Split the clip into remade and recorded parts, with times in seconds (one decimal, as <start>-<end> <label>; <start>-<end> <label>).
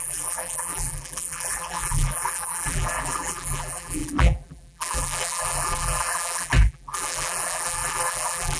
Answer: 0.0-8.6 remade